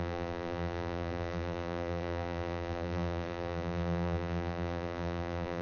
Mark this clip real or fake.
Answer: fake